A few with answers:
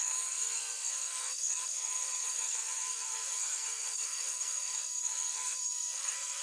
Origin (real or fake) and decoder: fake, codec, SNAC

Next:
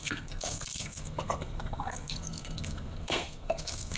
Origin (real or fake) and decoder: fake, codec, SNAC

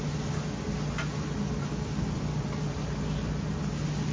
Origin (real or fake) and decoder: real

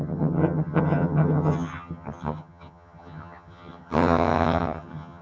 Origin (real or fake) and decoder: fake, vocoder, HiFi-GAN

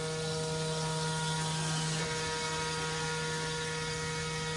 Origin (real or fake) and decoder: real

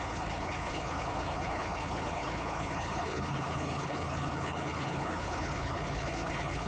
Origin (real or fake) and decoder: fake, codec, HILCodec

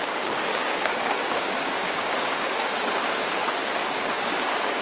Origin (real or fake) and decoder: fake, codec, DAC